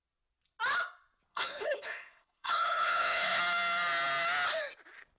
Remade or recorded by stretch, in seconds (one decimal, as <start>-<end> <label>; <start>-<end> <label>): 0.0-1.3 recorded; 1.3-3.4 remade; 3.4-5.2 recorded